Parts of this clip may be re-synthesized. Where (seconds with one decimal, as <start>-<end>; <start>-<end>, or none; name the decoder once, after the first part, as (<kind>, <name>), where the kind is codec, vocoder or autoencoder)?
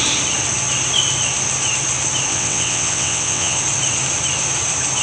2.3-3.6 (vocoder, WaveNeXt)